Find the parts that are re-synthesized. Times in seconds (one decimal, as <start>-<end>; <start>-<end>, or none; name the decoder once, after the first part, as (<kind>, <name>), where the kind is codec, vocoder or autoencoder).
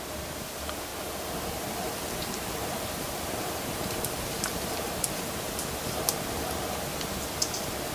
0.9-5.6 (vocoder, BigVGAN v2)